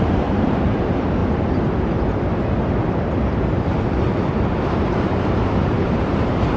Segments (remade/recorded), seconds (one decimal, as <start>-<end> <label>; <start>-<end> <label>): 0.0-1.2 remade; 1.2-4.7 recorded; 4.7-6.6 remade